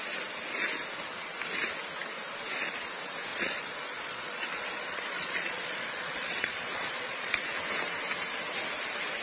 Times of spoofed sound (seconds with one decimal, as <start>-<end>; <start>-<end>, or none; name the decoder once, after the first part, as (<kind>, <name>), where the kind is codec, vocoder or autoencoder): 3.3-7.3 (vocoder, Vocos)